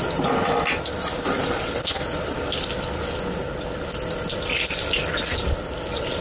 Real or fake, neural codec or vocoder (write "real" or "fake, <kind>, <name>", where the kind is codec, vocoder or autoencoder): real